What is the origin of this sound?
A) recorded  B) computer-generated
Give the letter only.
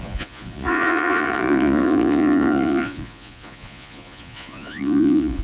B